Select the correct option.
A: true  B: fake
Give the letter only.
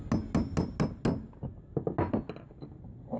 A